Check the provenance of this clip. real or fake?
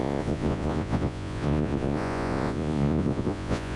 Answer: fake